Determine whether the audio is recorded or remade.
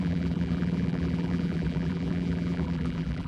remade